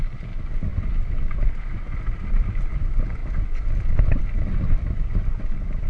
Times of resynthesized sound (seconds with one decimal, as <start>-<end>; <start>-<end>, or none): none